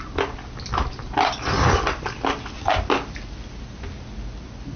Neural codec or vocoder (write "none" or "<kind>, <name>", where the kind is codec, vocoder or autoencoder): none